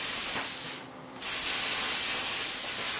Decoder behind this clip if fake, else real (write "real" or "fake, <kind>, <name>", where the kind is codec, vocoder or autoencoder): real